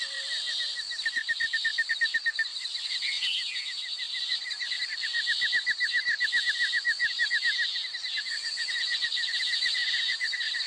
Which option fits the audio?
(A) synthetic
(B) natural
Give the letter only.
B